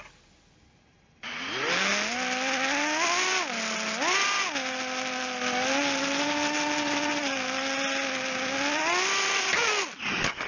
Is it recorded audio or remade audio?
recorded